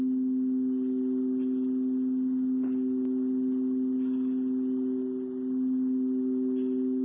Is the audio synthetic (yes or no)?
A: no